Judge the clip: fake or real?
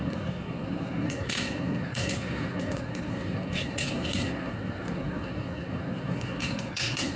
fake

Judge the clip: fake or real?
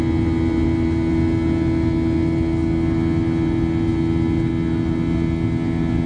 real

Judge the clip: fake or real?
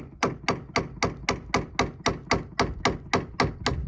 real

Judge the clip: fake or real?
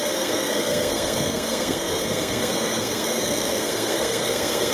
fake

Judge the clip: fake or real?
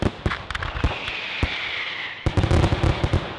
real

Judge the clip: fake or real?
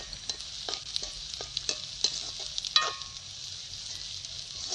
real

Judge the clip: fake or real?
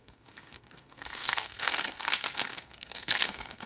fake